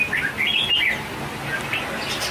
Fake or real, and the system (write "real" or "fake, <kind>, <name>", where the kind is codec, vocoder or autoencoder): real